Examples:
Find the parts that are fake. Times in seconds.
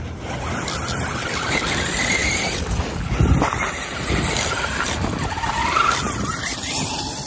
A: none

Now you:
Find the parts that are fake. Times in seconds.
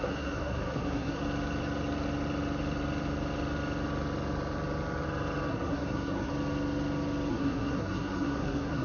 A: 0.0-1.2 (codec, SNAC); 5.5-6.3; 7.3-8.8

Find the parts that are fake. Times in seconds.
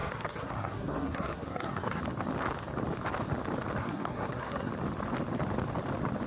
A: 0.0-2.0 (codec, SNAC); 3.8-4.7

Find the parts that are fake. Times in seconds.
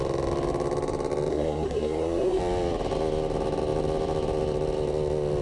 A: 1.3-2.4 (codec, SNAC)